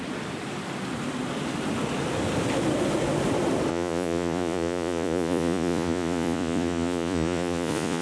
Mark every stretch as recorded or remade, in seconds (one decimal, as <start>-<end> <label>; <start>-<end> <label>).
0.0-3.7 recorded; 3.7-8.0 remade